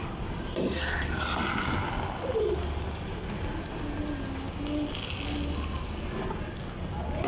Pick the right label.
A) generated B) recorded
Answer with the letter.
B